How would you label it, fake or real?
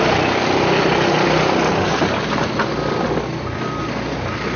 real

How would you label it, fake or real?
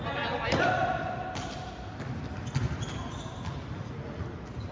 real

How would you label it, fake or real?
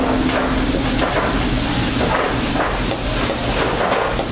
real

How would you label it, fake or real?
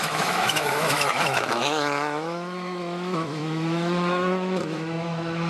fake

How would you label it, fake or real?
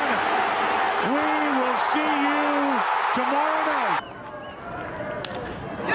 real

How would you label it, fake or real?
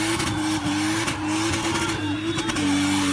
real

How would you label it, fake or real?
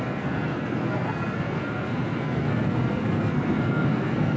fake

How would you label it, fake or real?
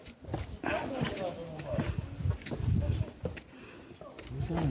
real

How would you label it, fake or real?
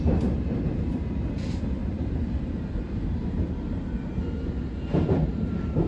fake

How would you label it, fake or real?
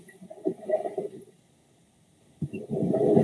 real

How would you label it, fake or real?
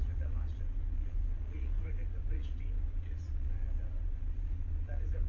fake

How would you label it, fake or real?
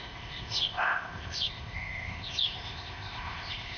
fake